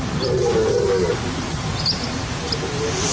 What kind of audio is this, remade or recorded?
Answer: recorded